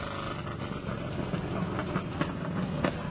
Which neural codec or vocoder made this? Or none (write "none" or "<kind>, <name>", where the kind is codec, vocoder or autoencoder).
none